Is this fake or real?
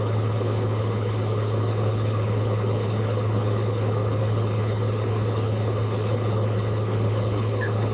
fake